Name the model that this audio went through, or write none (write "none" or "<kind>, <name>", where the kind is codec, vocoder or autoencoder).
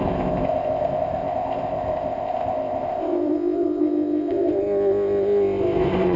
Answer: codec, ZipCodec